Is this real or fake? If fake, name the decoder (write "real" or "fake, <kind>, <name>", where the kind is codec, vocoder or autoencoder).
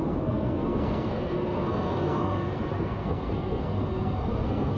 fake, codec, SNAC